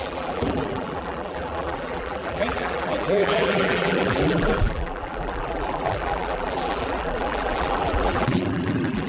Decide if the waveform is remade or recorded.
remade